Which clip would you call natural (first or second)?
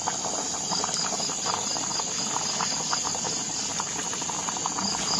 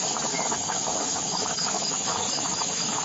first